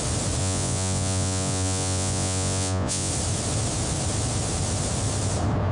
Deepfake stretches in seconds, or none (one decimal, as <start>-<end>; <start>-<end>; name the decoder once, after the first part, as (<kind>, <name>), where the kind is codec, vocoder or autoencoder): 0.4-3.1 (vocoder, Vocos)